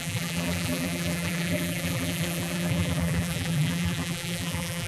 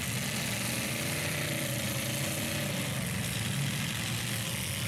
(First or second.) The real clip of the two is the second